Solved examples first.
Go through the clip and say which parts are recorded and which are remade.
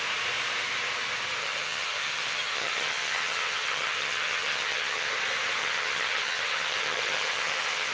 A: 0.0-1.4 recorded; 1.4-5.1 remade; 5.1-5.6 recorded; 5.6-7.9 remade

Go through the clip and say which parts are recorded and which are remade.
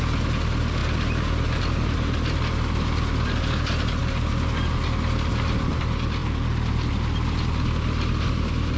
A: 0.0-8.8 recorded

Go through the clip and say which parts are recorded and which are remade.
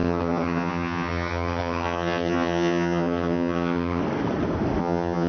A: 0.0-4.0 remade; 4.0-4.8 recorded; 4.8-5.3 remade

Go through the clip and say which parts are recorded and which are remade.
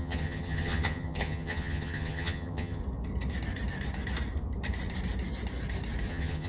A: 0.0-2.8 remade; 2.8-6.1 recorded; 6.1-6.5 remade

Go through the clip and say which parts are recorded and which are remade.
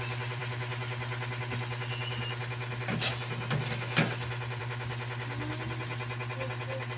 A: 0.0-7.0 recorded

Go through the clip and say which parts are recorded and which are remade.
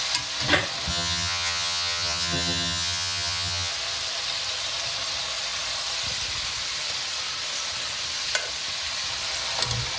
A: 0.0-0.9 recorded; 0.9-3.7 remade; 3.7-10.0 recorded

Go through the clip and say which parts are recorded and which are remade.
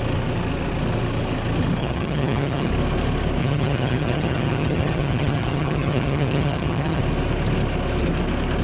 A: 0.0-1.8 recorded; 1.8-2.7 remade; 2.7-3.4 recorded; 3.4-7.0 remade; 7.0-8.6 recorded